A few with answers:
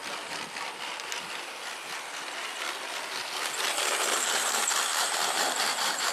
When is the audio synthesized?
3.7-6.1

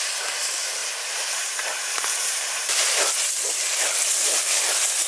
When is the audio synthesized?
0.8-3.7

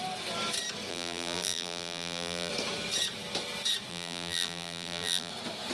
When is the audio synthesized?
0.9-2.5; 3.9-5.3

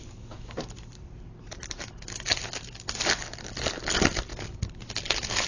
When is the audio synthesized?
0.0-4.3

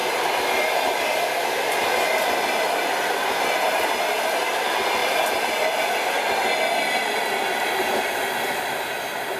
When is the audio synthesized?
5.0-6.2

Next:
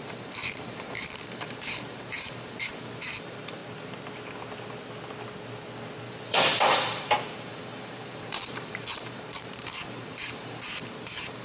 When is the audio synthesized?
0.0-3.6; 6.1-11.4